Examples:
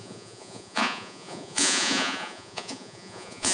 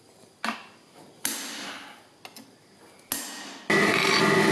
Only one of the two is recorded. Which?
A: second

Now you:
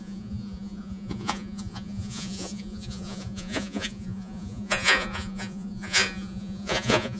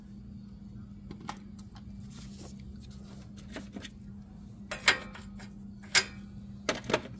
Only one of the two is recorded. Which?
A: second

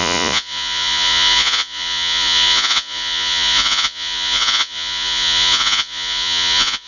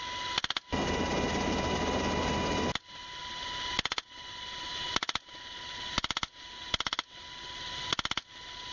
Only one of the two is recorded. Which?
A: second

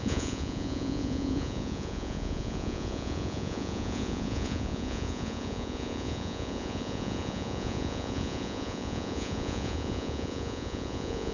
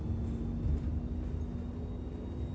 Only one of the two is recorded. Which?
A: second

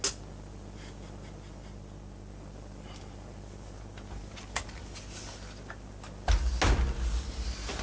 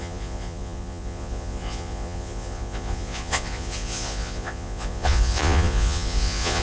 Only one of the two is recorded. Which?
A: first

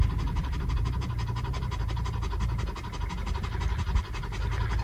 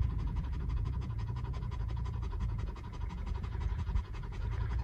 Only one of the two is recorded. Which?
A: first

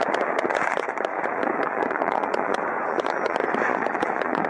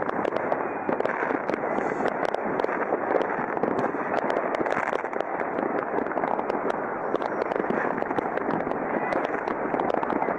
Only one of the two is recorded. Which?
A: second